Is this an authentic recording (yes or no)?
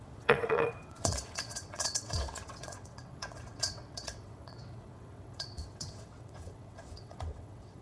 no